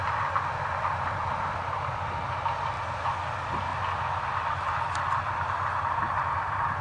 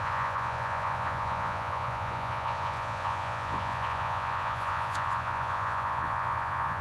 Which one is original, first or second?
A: first